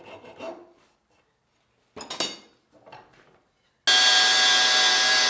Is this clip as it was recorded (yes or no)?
yes